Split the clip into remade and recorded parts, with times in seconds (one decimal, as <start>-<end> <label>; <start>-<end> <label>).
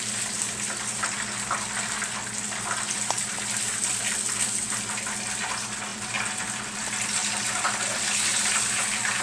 0.0-9.2 recorded